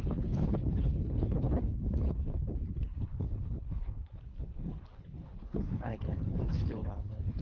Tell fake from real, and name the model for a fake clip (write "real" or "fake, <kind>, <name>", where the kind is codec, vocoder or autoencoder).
fake, codec, HILCodec